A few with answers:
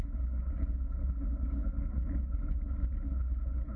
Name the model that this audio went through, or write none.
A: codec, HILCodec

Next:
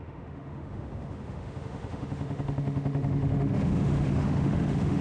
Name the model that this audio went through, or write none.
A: autoencoder, DAC-VAE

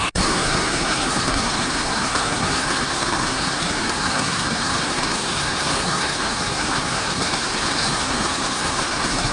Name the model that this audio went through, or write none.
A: codec, SNAC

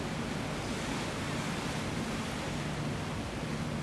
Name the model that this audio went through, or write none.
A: none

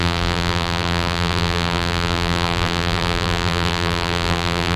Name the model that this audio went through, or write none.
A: vocoder, BigVGAN v2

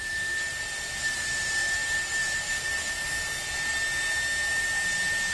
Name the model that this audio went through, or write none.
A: none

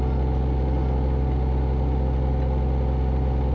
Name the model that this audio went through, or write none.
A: none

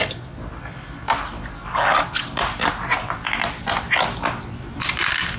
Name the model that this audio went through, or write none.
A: none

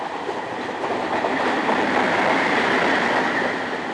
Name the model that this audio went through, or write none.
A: none